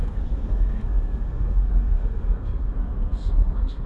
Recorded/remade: remade